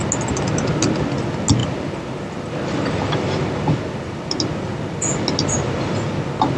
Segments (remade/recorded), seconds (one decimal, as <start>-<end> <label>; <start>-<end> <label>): 0.0-6.6 recorded